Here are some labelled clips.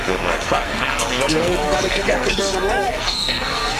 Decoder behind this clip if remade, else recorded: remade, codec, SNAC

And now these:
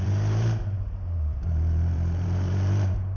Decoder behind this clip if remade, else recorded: remade, vocoder, BigVGAN v2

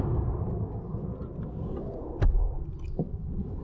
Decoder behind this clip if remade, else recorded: recorded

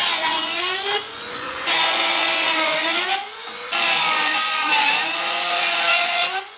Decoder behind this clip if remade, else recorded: remade, vocoder, Vocos